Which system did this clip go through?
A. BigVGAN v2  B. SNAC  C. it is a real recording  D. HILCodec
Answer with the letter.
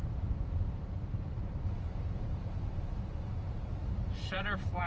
A